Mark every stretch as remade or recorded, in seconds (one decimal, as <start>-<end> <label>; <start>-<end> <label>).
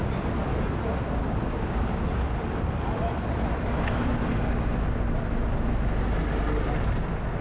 0.0-7.4 recorded